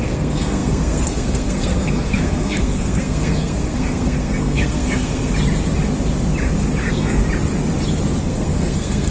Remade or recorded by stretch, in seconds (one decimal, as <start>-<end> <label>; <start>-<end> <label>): 0.0-5.3 remade; 5.3-6.8 recorded; 6.8-7.2 remade; 7.2-8.2 recorded; 8.2-9.1 remade